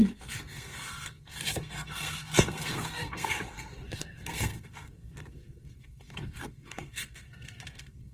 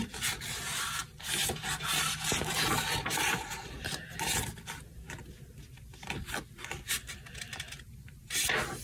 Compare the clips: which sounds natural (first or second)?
second